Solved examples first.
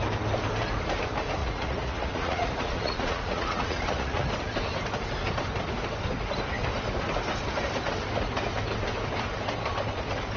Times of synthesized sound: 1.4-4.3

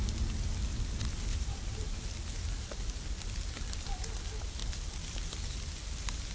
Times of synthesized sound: 1.3-2.0

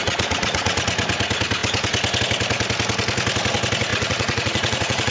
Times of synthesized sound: 0.0-0.8; 3.9-5.1